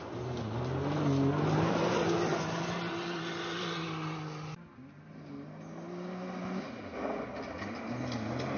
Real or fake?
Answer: real